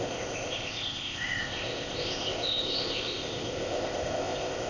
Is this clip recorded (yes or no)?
no